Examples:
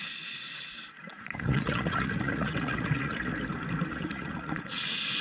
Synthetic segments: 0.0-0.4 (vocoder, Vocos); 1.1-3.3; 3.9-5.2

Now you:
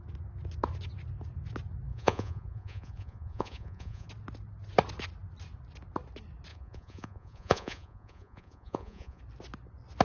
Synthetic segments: 1.9-4.1 (vocoder, Vocos); 6.5-9.2

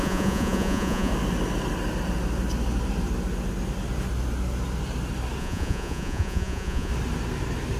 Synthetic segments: 0.0-1.1 (vocoder, Vocos); 5.4-6.9

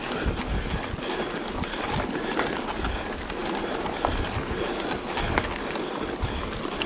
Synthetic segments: none

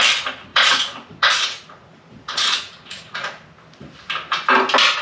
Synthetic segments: 0.5-3.5 (vocoder, Vocos)

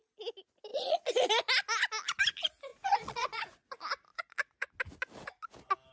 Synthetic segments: 0.7-1.3 (vocoder, Vocos); 2.7-3.4; 4.1-4.7